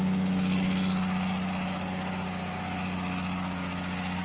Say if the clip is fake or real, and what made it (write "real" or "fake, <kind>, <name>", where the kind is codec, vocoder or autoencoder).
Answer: real